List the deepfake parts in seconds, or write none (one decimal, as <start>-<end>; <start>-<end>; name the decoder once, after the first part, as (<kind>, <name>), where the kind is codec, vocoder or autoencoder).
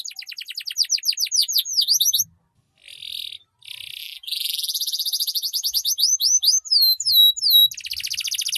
1.4-2.2 (vocoder, BigVGAN v2); 4.0-7.1